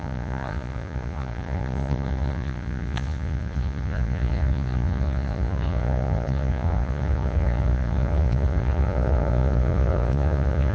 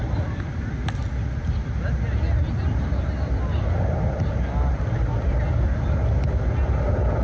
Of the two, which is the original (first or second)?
second